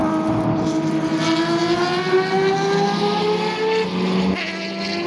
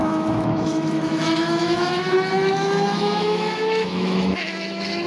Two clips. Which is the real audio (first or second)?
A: first